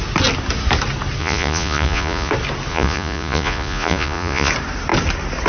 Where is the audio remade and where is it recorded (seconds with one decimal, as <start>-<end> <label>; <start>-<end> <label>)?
0.0-1.2 recorded; 1.2-2.3 remade; 2.3-2.7 recorded; 2.7-4.5 remade; 4.5-5.5 recorded